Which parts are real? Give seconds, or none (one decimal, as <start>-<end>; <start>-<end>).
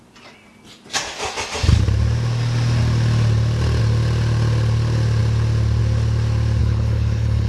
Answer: 0.0-6.6